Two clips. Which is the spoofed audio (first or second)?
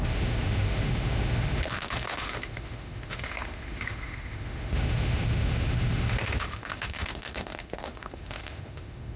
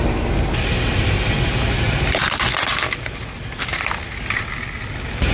first